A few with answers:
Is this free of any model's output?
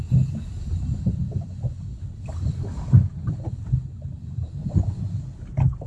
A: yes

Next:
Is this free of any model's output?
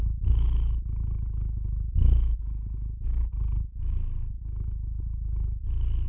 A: yes